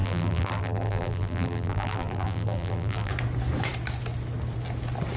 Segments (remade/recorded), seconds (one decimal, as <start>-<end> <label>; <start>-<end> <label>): 0.0-3.1 remade; 3.1-5.2 recorded